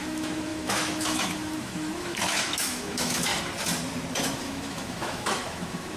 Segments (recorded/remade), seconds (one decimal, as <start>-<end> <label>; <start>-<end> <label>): 0.0-3.3 remade; 3.3-4.2 recorded; 4.2-6.0 remade